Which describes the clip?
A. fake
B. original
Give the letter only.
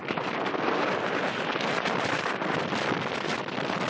B